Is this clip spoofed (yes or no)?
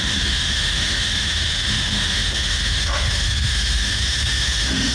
yes